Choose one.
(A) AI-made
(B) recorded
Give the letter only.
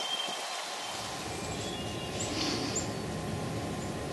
B